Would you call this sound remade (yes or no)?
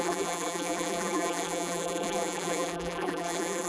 yes